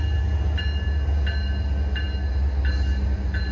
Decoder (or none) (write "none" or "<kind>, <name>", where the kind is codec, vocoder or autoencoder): none